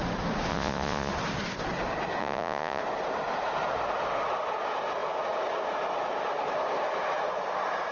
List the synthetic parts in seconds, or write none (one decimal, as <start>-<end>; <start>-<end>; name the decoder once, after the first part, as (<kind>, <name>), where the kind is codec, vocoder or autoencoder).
0.5-1.1 (vocoder, Vocos); 2.2-2.8